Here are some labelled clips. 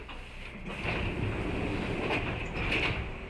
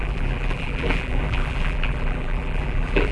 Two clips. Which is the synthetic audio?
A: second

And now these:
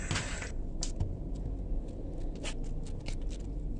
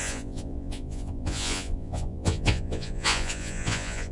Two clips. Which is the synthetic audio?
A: second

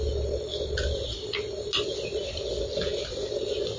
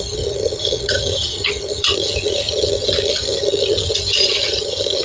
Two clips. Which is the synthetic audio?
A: second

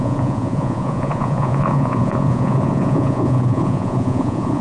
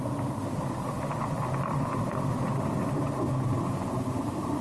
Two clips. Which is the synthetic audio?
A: first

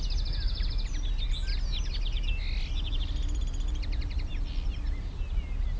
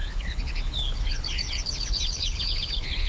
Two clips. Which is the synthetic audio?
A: second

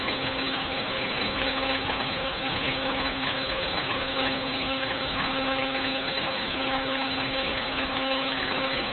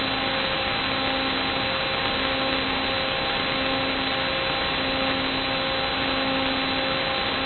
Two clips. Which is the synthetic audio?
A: first